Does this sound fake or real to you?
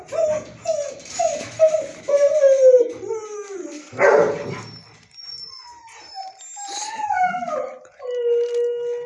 real